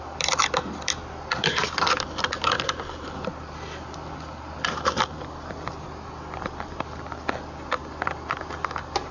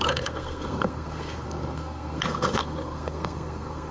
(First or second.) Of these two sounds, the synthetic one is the second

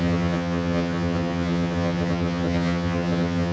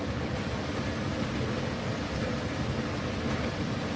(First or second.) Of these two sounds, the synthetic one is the first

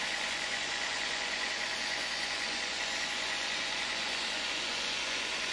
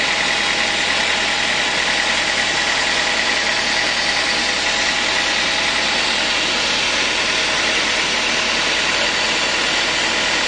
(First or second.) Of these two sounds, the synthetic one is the first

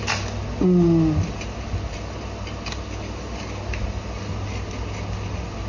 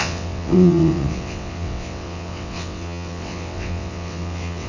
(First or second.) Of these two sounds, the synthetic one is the second